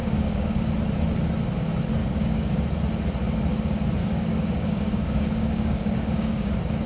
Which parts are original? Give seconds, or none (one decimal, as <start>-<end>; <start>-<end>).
0.7-2.0; 2.6-4.0; 6.5-6.9